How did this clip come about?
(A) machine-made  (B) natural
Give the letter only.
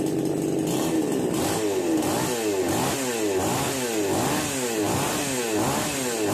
B